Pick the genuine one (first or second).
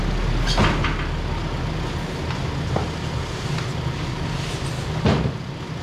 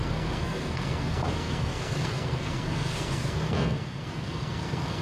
first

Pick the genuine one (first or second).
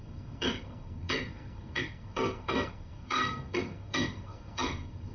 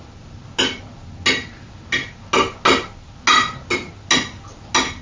second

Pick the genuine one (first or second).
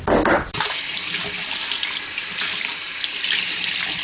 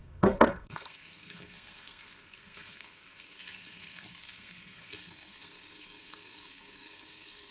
first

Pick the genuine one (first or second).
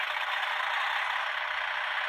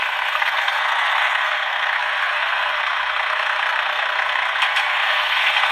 first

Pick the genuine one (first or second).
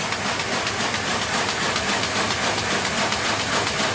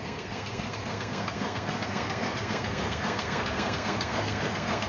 first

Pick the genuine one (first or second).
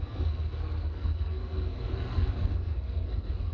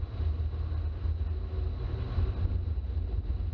second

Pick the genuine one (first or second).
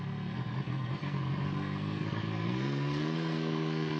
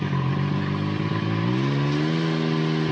second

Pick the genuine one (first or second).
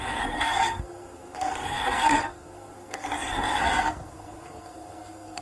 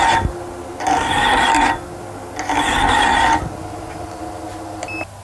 second